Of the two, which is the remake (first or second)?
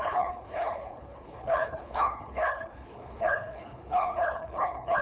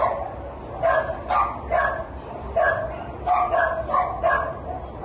first